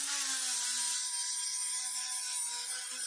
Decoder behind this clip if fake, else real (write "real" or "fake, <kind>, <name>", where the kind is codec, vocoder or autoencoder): real